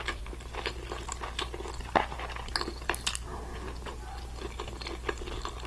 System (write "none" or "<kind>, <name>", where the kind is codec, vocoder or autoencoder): none